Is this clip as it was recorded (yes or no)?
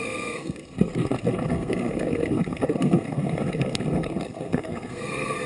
no